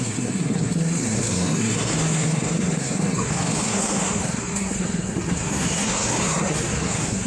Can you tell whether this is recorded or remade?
remade